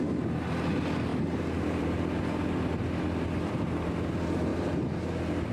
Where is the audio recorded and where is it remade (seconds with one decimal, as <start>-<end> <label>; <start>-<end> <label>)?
0.0-1.1 recorded; 1.1-3.9 remade; 3.9-4.5 recorded; 4.5-5.5 remade